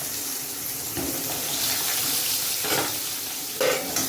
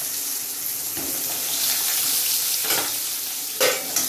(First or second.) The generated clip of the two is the first